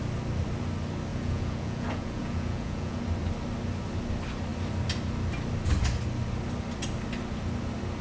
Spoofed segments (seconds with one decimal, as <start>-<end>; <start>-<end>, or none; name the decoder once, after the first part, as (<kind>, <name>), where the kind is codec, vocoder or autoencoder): 1.1-3.0 (vocoder, Vocos)